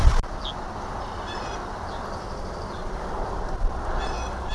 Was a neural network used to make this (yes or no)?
no